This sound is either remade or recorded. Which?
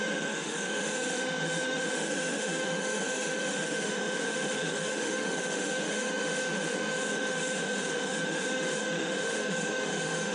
remade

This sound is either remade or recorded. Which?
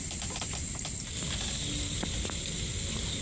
recorded